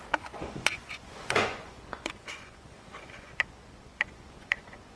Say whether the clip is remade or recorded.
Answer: remade